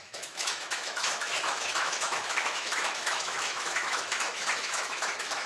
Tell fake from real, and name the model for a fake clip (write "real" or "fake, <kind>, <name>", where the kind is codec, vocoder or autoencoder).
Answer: fake, autoencoder, DAC-VAE